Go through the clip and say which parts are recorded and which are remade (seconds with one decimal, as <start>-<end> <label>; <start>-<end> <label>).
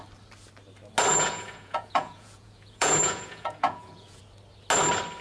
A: 0.0-1.1 recorded; 1.1-4.2 remade; 4.2-5.2 recorded